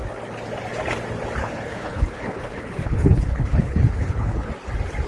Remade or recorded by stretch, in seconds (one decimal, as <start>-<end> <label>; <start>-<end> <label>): 0.0-1.4 recorded; 1.4-4.5 remade; 4.5-5.1 recorded